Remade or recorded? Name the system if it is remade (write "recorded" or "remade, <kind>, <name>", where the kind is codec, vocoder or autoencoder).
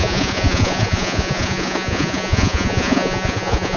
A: remade, vocoder, Vocos